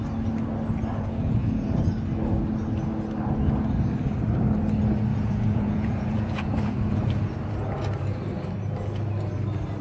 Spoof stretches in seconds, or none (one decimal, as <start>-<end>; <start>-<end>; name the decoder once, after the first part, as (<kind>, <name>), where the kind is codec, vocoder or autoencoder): 0.9-1.8 (vocoder, Vocos); 5.1-7.3